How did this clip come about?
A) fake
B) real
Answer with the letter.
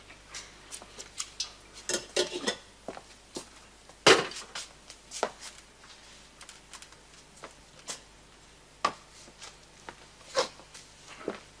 B